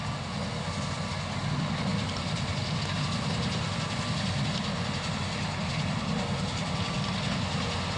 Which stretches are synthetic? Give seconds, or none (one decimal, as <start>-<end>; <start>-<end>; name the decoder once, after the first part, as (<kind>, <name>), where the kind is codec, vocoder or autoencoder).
1.9-6.7 (vocoder, BigVGAN v2)